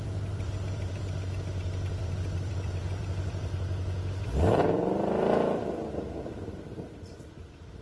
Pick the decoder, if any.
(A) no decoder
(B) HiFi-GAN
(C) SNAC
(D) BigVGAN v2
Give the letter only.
D